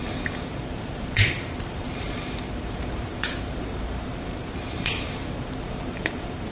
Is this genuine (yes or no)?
no